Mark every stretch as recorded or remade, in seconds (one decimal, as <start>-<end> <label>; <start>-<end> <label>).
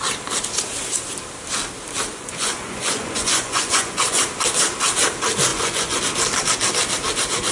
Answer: 0.0-2.1 recorded; 2.1-4.2 remade; 4.2-5.5 recorded; 5.5-6.0 remade; 6.0-7.5 recorded